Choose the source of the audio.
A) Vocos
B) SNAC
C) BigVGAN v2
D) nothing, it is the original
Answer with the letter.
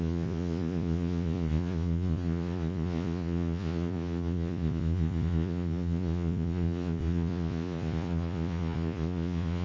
A